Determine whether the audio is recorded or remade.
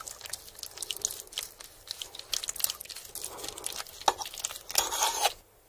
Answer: recorded